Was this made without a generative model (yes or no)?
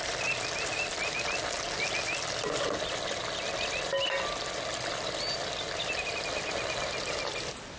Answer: yes